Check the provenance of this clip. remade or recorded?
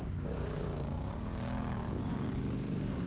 remade